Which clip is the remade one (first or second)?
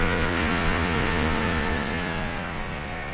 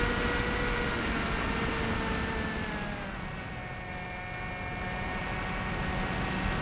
first